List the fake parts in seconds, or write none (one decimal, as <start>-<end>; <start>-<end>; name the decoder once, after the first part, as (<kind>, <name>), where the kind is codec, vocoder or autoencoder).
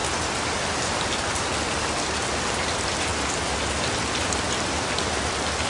1.3-3.1 (vocoder, BigVGAN v2); 3.9-5.7